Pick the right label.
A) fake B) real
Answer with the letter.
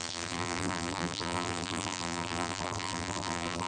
A